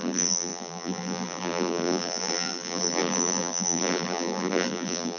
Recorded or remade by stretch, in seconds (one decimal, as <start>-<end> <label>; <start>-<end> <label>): 0.0-5.2 remade